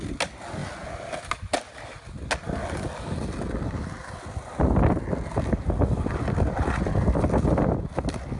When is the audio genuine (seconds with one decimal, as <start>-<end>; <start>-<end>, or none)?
0.0-8.4